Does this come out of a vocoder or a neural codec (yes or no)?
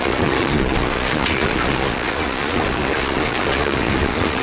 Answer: yes